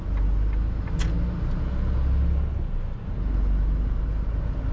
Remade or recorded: recorded